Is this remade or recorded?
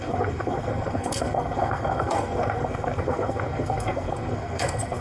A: remade